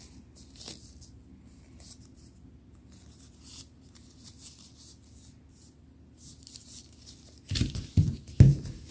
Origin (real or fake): real